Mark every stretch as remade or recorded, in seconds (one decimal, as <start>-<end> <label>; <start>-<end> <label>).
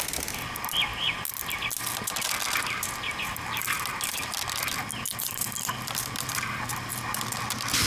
0.0-0.9 remade; 0.9-1.8 recorded; 1.8-7.9 remade